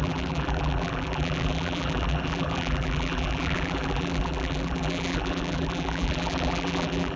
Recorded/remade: remade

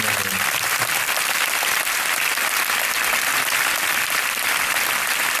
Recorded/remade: recorded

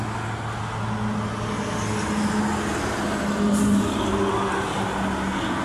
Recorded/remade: recorded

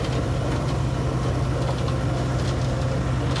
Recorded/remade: recorded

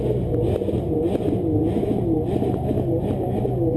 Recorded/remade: recorded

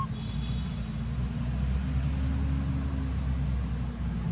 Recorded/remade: recorded